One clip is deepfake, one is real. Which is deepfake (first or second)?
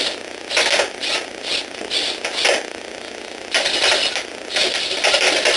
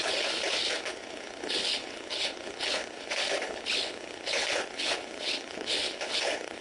second